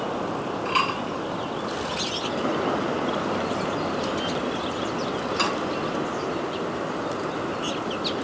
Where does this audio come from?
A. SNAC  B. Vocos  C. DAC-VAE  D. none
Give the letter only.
D